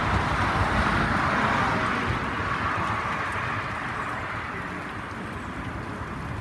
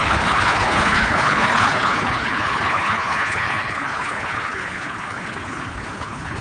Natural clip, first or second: first